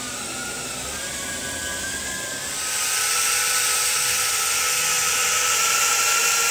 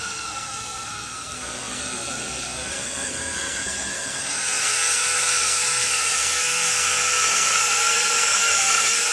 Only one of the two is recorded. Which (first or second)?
first